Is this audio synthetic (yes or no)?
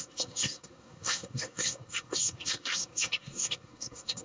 yes